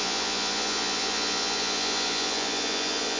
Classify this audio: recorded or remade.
remade